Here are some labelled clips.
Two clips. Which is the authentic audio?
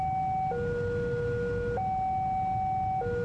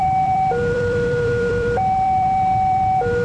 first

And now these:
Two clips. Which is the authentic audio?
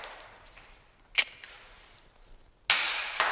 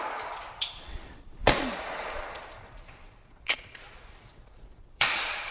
first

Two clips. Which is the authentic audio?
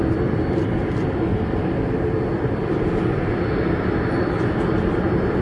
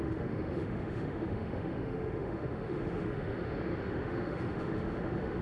first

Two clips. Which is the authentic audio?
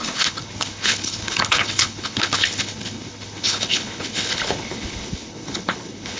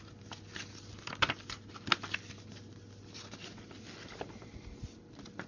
second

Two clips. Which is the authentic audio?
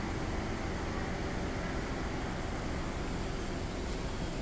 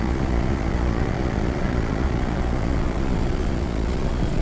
first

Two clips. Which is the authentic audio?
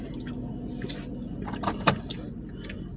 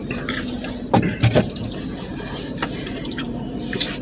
first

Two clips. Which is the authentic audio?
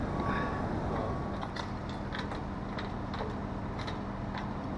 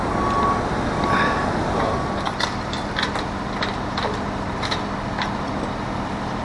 first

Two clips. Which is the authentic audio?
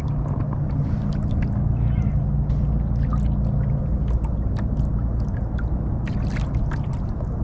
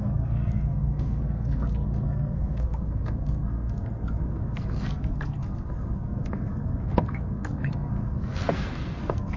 first